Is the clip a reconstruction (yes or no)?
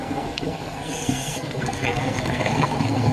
yes